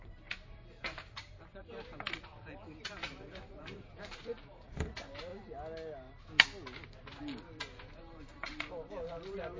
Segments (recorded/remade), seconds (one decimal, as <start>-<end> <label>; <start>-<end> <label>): 0.0-5.3 remade; 5.3-7.2 recorded; 7.2-9.6 remade